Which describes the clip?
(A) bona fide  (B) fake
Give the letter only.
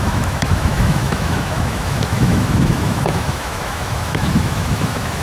B